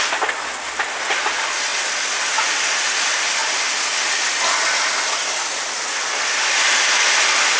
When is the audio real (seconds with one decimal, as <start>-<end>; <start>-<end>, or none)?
0.0-7.6